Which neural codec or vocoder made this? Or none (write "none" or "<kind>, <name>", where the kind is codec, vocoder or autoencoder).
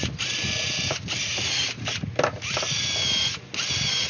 none